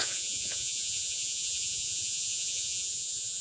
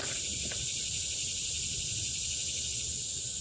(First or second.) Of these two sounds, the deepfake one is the first